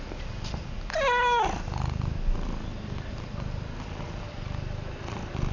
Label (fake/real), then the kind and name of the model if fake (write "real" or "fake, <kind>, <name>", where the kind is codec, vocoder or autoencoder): real